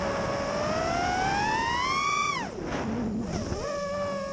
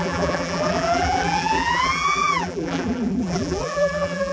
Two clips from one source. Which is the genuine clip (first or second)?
first